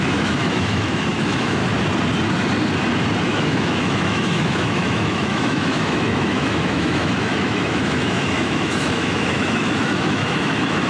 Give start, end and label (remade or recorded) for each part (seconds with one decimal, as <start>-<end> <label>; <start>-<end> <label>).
0.0-1.6 remade; 1.6-3.2 recorded; 3.2-10.9 remade